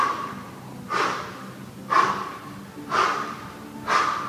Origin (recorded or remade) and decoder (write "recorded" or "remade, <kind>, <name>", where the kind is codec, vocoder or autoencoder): recorded